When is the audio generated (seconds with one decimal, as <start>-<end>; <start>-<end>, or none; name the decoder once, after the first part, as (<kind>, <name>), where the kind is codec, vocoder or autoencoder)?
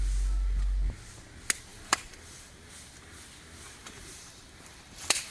1.7-2.7 (vocoder, BigVGAN v2); 3.8-5.3